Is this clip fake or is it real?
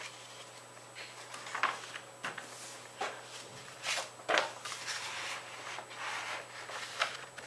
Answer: real